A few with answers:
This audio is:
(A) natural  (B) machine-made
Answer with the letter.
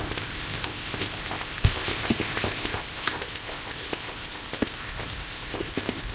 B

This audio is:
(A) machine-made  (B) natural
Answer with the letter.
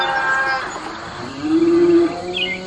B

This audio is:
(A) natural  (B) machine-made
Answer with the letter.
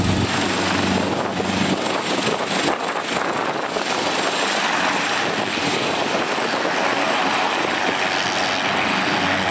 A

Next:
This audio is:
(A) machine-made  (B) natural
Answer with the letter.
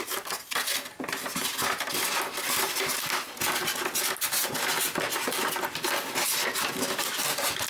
B